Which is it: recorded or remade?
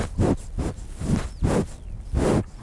recorded